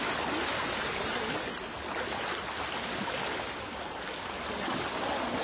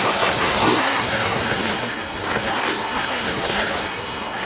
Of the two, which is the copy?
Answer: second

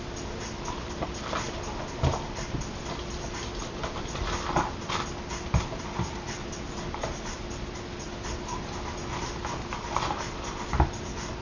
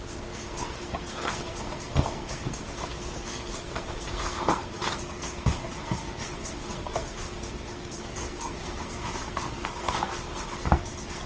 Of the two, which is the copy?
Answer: second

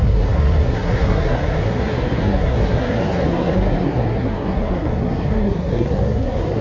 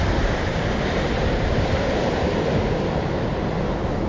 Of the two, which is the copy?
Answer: first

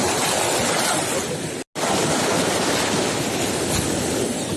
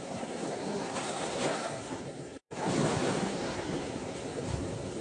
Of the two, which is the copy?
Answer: second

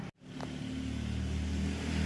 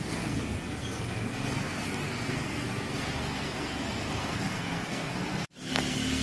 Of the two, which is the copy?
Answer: second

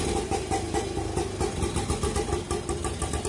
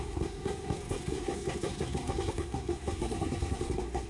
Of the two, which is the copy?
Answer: second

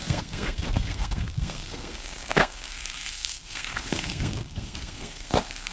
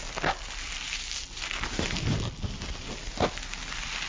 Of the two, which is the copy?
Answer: first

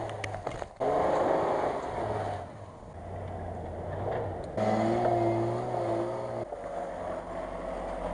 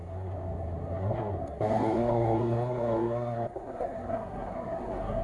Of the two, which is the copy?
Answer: second